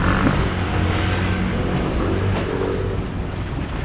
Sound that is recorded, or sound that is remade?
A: recorded